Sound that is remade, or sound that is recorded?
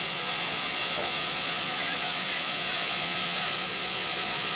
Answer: remade